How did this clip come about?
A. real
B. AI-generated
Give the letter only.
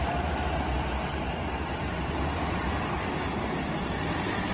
A